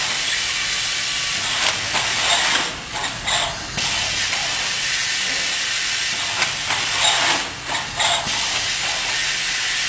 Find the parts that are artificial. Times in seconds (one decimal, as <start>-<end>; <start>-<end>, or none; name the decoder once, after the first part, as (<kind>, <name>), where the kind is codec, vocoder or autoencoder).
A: none